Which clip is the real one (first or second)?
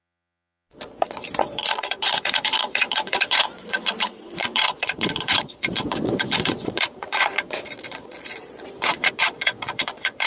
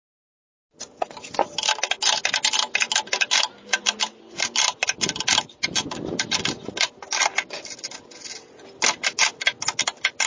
second